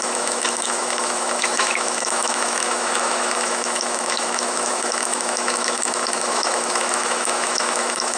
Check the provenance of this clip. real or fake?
fake